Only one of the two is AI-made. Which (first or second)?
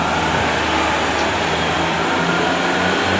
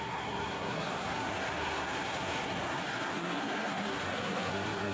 second